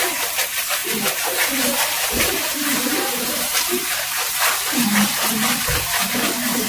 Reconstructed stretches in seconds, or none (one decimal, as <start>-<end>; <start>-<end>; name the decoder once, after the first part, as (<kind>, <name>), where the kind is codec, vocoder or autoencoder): 0.0-6.7 (vocoder, BigVGAN v2)